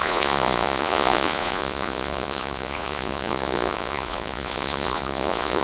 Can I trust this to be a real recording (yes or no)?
no